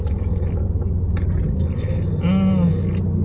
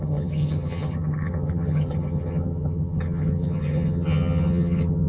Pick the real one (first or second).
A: first